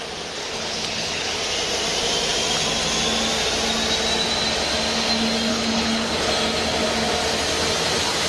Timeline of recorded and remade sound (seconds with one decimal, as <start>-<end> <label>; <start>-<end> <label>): 0.0-0.4 recorded; 0.4-1.4 remade; 1.4-5.5 recorded; 5.5-6.3 remade; 6.3-8.3 recorded